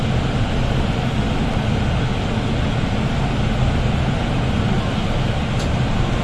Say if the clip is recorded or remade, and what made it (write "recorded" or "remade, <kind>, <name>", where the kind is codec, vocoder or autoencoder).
recorded